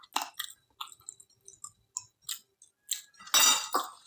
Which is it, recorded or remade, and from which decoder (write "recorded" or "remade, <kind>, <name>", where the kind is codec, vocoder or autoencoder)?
recorded